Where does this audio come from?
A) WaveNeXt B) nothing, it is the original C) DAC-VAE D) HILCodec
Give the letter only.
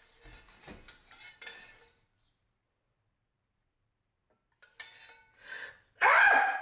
B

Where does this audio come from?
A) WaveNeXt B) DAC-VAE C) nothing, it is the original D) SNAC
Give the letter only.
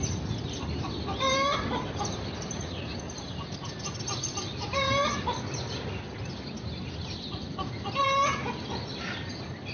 C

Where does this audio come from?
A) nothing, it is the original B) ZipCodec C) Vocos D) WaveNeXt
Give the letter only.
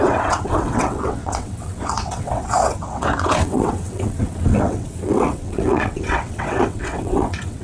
D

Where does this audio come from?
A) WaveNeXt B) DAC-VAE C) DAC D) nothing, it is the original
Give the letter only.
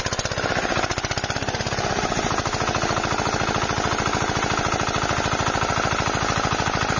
D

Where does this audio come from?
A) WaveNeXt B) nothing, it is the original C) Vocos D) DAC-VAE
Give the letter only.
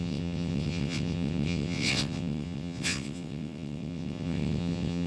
A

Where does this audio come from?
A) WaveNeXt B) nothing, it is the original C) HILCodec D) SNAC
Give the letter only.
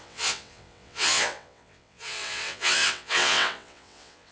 A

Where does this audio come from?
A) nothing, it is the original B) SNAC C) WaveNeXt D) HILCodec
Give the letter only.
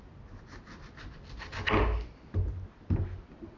A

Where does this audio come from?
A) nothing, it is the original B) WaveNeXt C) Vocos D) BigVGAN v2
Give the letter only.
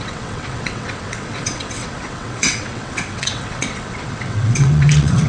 B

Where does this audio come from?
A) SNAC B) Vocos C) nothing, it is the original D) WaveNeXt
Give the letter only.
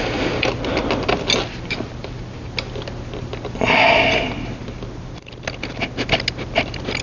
C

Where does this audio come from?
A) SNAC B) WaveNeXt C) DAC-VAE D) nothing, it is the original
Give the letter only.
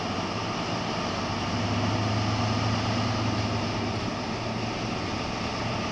D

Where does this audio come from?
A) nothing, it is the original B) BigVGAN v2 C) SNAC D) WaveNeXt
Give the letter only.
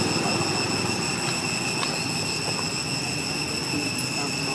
A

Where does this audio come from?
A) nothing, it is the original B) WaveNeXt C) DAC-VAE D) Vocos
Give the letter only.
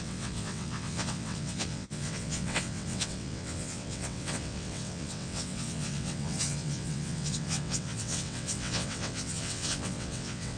B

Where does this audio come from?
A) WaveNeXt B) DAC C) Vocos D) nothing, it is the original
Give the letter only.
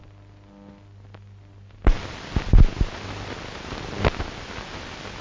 D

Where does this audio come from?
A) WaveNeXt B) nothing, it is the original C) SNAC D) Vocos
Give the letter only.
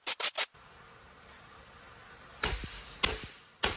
B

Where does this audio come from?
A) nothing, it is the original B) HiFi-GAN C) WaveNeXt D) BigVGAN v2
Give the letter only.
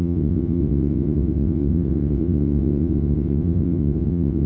C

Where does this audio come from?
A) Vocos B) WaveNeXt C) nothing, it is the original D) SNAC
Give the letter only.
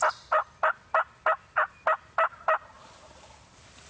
C